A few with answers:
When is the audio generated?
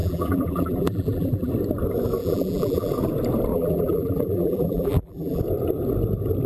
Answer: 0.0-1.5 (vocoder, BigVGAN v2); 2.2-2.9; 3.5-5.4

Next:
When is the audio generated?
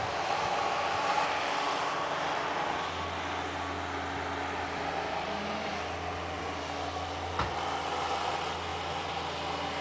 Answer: 8.7-9.2 (vocoder, BigVGAN v2)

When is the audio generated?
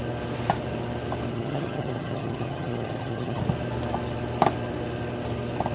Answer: 1.3-3.4 (vocoder, HiFi-GAN)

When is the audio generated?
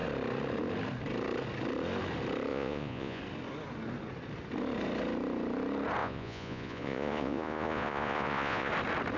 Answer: 2.5-3.2 (vocoder, Vocos); 6.0-8.7